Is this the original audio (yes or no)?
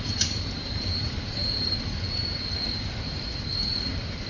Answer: no